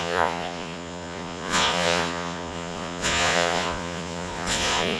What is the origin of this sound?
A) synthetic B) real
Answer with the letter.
A